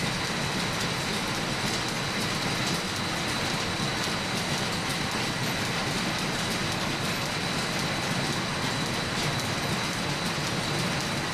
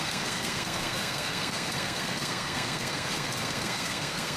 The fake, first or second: second